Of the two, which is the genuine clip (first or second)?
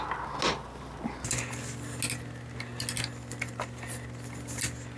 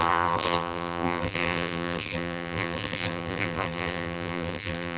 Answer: first